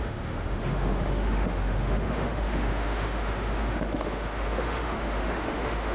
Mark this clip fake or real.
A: fake